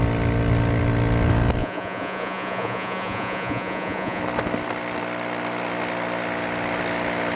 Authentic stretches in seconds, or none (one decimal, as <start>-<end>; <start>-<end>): 0.0-1.6; 4.2-7.4